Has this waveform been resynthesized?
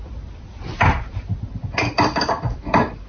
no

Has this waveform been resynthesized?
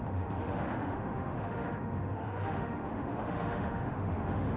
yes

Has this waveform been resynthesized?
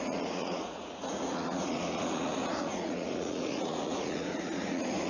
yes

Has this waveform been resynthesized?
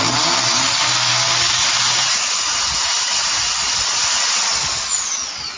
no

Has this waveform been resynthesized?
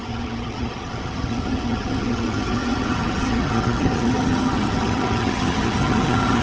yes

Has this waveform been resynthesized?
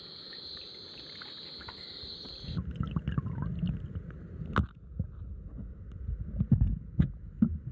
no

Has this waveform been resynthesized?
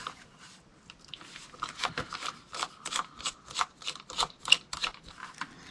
no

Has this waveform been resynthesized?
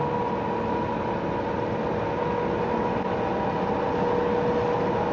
no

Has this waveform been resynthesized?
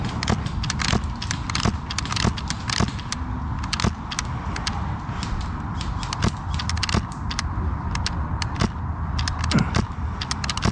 no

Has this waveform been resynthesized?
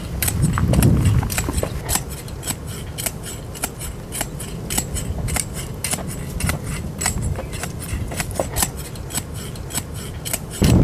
no